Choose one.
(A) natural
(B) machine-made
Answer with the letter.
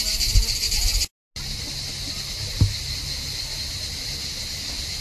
A